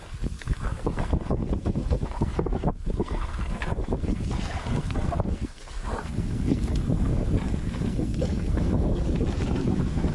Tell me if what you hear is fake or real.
fake